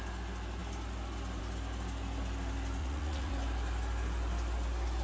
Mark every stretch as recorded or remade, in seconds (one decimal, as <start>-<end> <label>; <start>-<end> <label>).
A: 0.0-2.8 recorded; 2.8-3.3 remade; 3.3-5.0 recorded